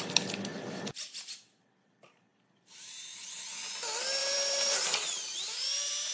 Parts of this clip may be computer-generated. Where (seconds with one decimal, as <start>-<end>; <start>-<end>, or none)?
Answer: 2.3-3.4; 4.2-6.1